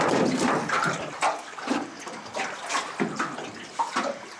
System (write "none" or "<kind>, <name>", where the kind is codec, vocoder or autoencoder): none